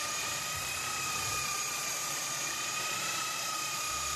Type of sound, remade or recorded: remade